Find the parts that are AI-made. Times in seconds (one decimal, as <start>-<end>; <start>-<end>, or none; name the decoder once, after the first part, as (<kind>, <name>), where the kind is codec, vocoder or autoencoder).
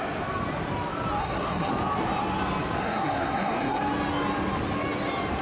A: 1.2-1.7 (codec, SNAC); 2.8-3.8